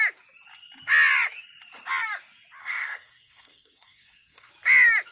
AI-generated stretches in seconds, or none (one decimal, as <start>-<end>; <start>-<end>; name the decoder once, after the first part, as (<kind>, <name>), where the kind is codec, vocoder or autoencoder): 2.6-4.5 (codec, SNAC)